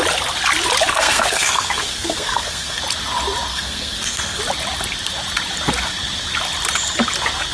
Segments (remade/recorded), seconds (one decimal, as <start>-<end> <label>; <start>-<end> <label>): 0.0-0.9 recorded; 0.9-2.8 remade; 2.8-3.5 recorded; 3.5-4.4 remade; 4.4-7.5 recorded